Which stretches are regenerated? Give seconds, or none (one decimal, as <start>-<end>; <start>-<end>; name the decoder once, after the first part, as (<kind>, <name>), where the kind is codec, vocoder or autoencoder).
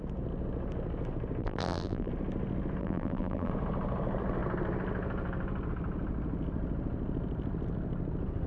1.4-2.1 (vocoder, BigVGAN v2); 2.8-3.5